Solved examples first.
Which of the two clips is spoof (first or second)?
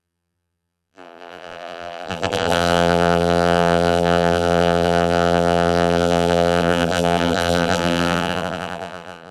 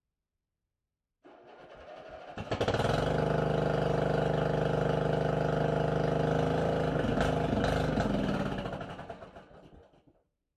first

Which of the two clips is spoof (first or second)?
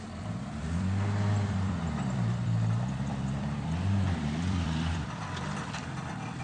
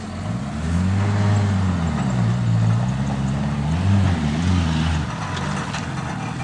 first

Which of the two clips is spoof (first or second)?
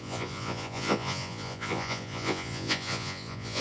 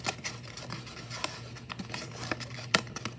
first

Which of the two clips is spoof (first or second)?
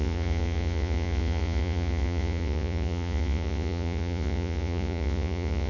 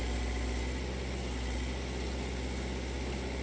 first